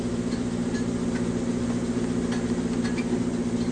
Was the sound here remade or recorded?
recorded